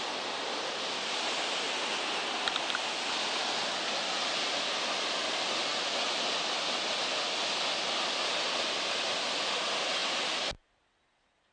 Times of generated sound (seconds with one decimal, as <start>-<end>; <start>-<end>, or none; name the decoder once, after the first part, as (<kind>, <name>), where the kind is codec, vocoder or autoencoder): none